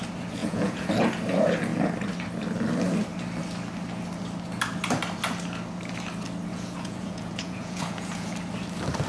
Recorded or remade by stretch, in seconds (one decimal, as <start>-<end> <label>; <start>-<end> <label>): 0.0-0.4 recorded; 0.4-0.9 remade; 0.9-6.5 recorded; 6.5-8.3 remade; 8.3-9.1 recorded